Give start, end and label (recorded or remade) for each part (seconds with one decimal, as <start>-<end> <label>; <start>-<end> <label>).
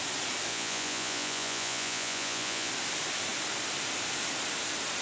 0.0-0.5 recorded; 0.5-2.7 remade; 2.7-5.0 recorded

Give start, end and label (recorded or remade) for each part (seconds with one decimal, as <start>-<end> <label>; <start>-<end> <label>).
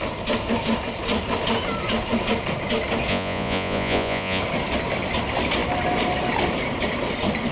0.0-3.1 recorded; 3.1-4.4 remade; 4.4-7.5 recorded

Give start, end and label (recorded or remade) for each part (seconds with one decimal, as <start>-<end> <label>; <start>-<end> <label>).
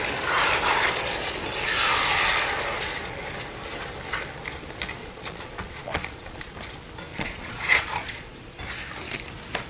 0.0-5.0 recorded; 5.0-6.5 remade; 6.5-7.1 recorded; 7.1-8.6 remade; 8.6-9.7 recorded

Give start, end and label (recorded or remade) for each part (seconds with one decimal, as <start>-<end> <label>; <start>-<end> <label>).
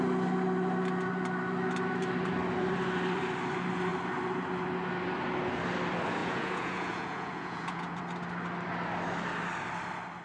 0.0-6.2 recorded; 6.2-8.0 remade; 8.0-10.2 recorded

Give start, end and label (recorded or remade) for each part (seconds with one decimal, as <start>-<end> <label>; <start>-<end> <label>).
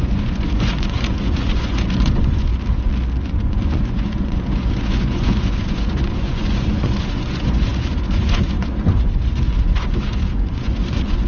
0.0-2.5 remade; 2.5-3.2 recorded; 3.2-11.3 remade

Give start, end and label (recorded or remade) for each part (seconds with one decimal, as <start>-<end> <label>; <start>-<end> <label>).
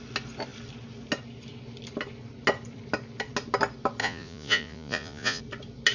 0.0-4.0 recorded; 4.0-5.4 remade; 5.4-5.9 recorded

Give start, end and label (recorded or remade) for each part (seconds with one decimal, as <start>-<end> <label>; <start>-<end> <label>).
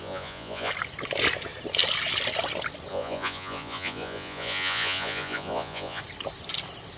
0.0-0.7 remade; 0.7-2.9 recorded; 2.9-6.0 remade; 6.0-7.0 recorded